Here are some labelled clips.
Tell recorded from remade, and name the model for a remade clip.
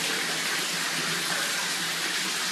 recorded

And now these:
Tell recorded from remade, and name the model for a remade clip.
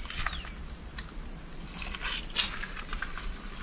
recorded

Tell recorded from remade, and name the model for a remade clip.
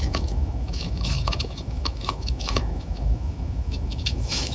remade, autoencoder, DAC-VAE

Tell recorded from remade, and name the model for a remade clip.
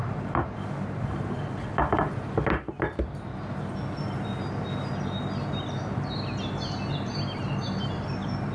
recorded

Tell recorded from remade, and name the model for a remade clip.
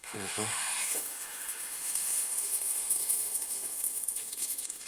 remade, autoencoder, DAC-VAE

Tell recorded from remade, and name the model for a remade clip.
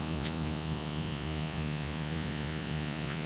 remade, vocoder, Vocos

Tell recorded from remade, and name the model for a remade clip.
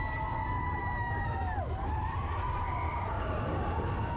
recorded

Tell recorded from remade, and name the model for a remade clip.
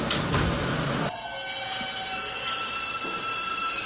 recorded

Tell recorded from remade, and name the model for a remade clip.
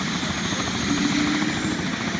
recorded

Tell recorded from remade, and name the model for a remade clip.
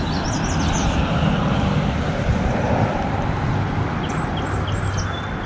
recorded